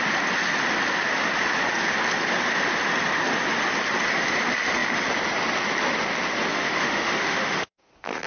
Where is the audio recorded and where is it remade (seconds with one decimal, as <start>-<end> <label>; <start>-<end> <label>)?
0.0-6.5 recorded; 6.5-7.9 remade; 7.9-8.3 recorded

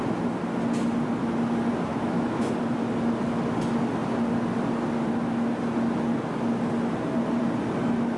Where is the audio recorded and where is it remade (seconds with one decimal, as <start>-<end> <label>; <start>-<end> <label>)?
0.0-1.9 recorded; 1.9-2.5 remade; 2.5-8.2 recorded